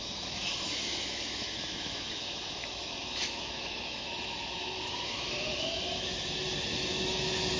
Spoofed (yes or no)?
yes